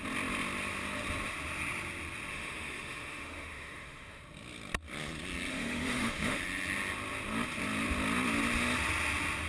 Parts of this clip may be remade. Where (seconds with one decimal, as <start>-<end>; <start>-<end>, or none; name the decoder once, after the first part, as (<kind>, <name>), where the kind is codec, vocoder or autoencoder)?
2.3-4.2 (autoencoder, DAC-VAE); 5.5-6.4